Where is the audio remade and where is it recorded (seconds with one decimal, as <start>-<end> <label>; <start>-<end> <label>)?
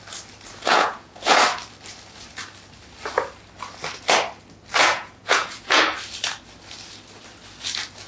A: 0.0-0.5 recorded; 0.5-1.4 remade; 1.4-4.8 recorded; 4.8-5.8 remade; 5.8-8.1 recorded